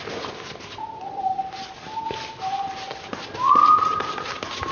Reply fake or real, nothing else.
real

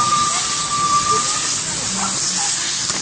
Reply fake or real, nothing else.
real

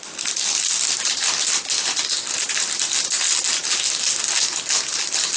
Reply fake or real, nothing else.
real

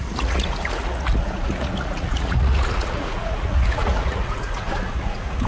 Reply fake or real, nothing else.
fake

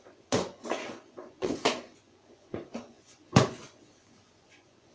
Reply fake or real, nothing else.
fake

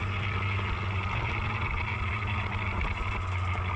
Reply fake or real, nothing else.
real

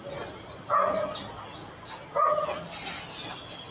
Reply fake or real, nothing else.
real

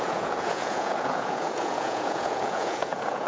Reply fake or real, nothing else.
fake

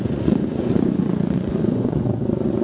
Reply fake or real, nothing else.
fake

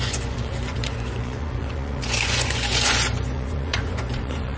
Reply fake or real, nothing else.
fake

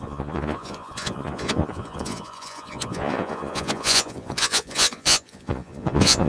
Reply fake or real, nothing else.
fake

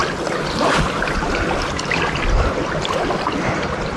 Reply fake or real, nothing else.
real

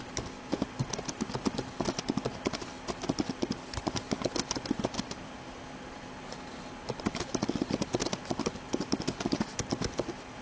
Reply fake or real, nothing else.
real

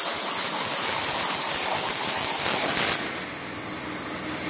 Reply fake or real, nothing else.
real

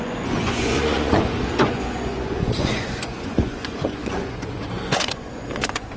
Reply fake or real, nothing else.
fake